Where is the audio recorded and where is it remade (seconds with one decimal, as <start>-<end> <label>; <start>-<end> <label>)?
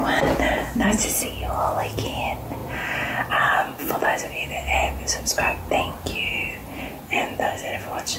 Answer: 0.0-1.0 remade; 1.0-8.2 recorded